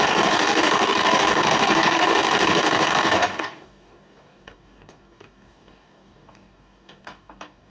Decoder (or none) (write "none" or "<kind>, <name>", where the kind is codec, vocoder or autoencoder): codec, DAC